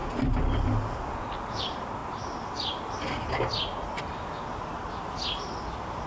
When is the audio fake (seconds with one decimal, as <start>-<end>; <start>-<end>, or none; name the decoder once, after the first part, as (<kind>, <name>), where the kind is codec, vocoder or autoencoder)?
none